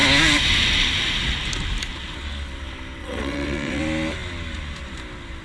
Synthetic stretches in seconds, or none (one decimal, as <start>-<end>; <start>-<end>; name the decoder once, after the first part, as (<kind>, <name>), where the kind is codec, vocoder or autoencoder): 3.0-3.8 (vocoder, WaveNeXt)